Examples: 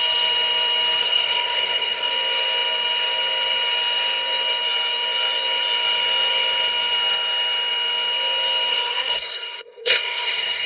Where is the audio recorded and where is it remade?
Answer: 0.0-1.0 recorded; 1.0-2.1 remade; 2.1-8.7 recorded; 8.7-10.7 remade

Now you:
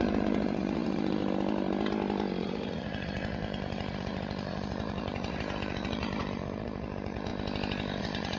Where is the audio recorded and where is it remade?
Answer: 0.0-1.2 remade; 1.2-2.4 recorded; 2.4-7.3 remade; 7.3-8.0 recorded; 8.0-8.4 remade

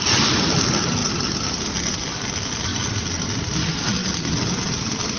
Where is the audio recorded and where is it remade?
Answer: 0.0-1.0 recorded; 1.0-2.3 remade; 2.3-2.7 recorded; 2.7-3.4 remade; 3.4-4.0 recorded; 4.0-5.2 remade

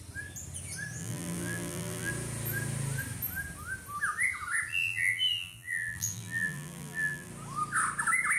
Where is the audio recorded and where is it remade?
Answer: 0.0-1.0 recorded; 1.0-2.1 remade; 2.1-4.7 recorded; 4.7-7.3 remade; 7.3-8.4 recorded

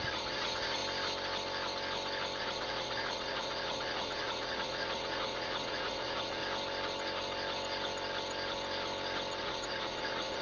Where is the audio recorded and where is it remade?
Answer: 0.0-0.8 remade; 0.8-2.4 recorded; 2.4-6.4 remade; 6.4-9.4 recorded; 9.4-10.4 remade